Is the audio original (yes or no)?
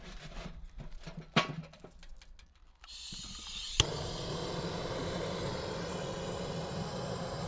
yes